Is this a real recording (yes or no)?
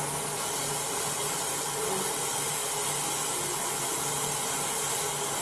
yes